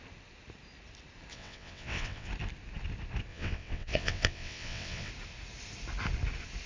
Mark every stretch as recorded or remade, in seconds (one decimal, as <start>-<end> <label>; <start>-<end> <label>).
0.0-1.3 recorded; 1.3-2.3 remade; 2.3-3.3 recorded; 3.3-5.1 remade; 5.1-6.7 recorded